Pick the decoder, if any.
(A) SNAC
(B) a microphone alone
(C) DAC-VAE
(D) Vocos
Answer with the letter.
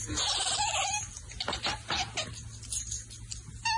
B